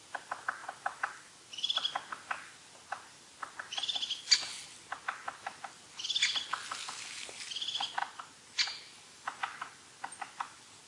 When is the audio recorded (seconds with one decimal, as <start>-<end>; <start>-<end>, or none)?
0.0-10.9